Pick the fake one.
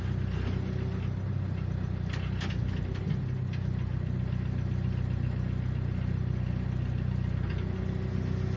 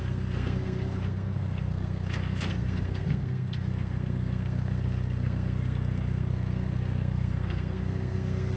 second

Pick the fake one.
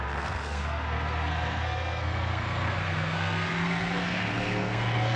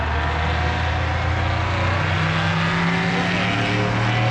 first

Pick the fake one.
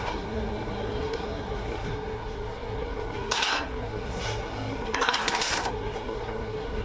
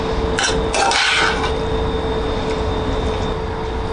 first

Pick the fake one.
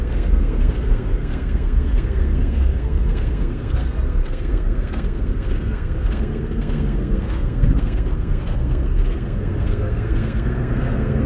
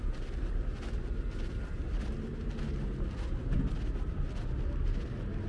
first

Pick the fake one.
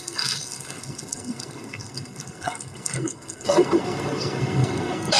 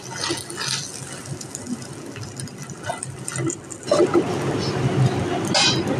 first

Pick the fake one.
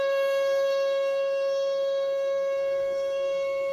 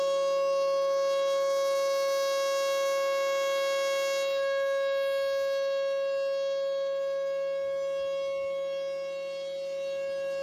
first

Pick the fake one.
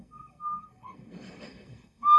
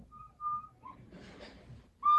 first